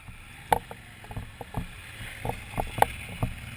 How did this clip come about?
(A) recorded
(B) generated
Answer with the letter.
A